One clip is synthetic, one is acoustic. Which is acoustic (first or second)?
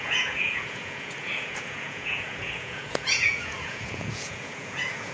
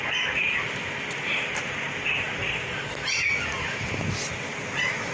second